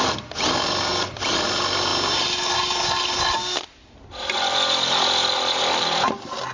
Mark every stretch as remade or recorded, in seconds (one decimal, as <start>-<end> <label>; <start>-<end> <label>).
0.0-6.5 recorded